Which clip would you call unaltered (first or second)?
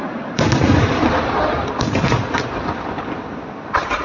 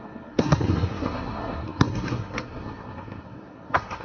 first